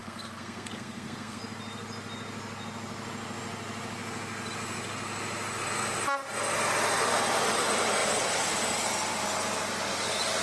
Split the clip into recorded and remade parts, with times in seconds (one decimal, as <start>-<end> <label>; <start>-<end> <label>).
0.0-1.4 remade; 1.4-10.4 recorded